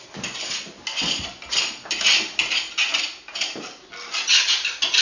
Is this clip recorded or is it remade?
recorded